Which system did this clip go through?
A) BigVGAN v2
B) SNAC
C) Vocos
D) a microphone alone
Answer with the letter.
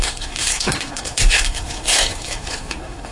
B